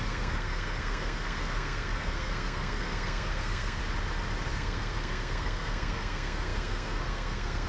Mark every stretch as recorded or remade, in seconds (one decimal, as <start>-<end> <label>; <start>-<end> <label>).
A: 0.0-3.8 remade; 3.8-4.5 recorded; 4.5-7.7 remade